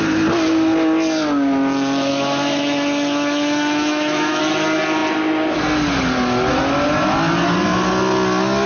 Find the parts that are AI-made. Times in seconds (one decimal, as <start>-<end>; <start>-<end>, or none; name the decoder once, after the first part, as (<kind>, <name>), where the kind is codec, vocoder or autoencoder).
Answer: 2.1-4.4 (autoencoder, DAC-VAE)